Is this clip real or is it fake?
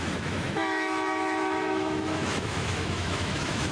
fake